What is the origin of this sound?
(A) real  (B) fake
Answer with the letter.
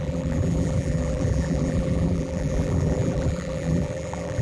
B